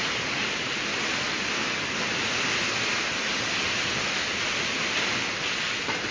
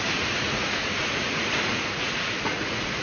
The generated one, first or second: second